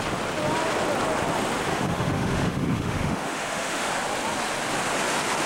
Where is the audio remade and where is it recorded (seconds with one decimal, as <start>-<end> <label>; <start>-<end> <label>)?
0.0-1.7 recorded; 1.7-3.9 remade; 3.9-5.5 recorded

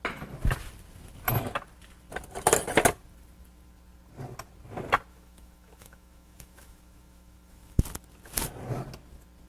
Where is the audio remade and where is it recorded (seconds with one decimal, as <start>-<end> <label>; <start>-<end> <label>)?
0.0-5.1 recorded; 5.1-7.8 remade; 7.8-9.5 recorded